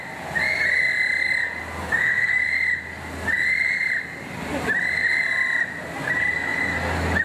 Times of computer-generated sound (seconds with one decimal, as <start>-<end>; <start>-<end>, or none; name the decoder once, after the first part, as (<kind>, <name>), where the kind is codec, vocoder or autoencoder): 1.8-2.4 (autoencoder, DAC-VAE)